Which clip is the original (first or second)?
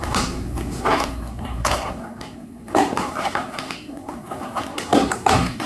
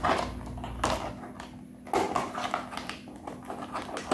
second